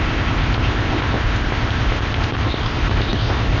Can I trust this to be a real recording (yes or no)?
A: no